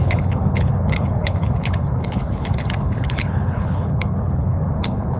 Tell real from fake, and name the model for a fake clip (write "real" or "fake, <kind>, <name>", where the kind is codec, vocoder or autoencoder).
fake, codec, HILCodec